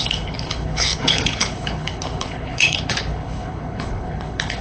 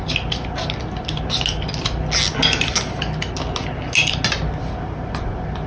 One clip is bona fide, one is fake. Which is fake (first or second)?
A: first